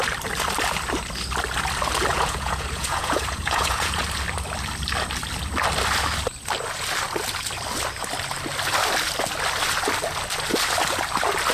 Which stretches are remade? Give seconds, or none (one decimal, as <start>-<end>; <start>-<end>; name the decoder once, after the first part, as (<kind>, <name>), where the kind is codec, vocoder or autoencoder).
2.1-4.0 (vocoder, Vocos)